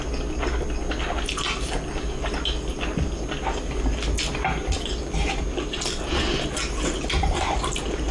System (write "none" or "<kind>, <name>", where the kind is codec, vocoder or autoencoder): none